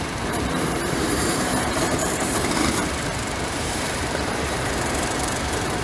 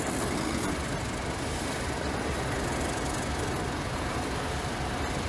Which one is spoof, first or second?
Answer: first